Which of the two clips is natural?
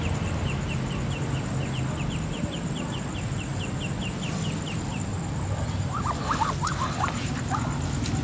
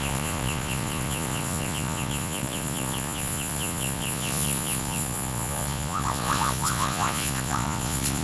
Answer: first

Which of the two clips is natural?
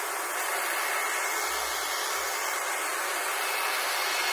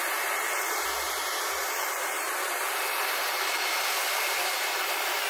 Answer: first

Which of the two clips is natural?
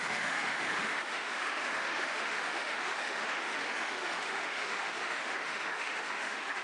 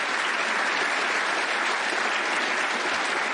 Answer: second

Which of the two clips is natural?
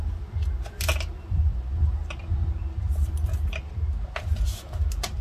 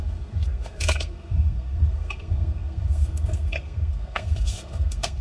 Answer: first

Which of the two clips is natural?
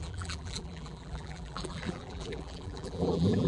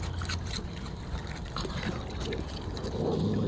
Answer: second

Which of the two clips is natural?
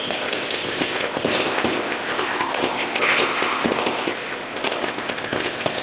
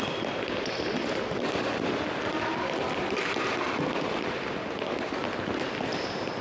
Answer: second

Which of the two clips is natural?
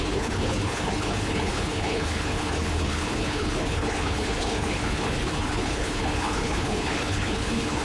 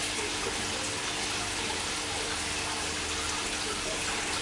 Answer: second